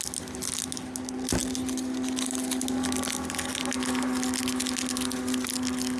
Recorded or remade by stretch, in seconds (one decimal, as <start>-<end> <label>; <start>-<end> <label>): 0.0-6.0 recorded